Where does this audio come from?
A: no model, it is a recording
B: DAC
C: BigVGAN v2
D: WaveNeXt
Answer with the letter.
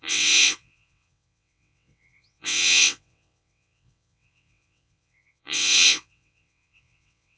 D